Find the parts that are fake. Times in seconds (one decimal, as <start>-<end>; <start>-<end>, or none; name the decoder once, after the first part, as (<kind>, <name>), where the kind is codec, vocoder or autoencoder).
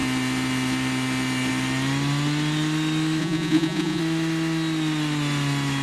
3.2-4.0 (vocoder, Vocos)